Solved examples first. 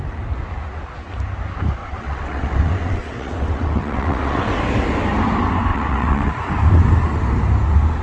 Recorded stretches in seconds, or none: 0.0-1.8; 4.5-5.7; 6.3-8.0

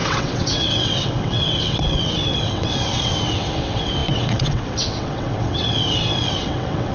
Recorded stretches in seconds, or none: none